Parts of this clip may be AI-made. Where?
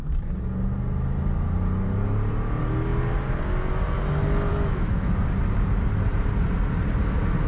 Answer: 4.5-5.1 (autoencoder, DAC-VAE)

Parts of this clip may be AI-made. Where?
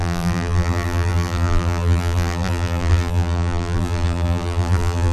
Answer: 0.0-5.1 (vocoder, BigVGAN v2)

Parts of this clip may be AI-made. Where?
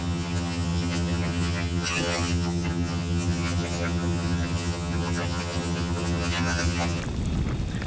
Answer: 0.0-7.0 (vocoder, HiFi-GAN)